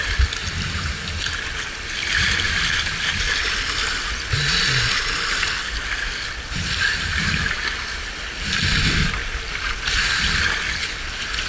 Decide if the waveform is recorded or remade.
recorded